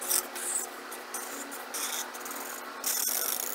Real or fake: real